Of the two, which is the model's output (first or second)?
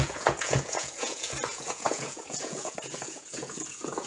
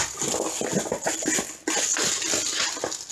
first